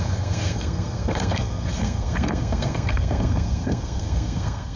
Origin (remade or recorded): remade